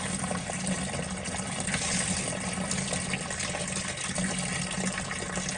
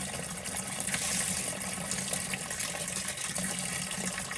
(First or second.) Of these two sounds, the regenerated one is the second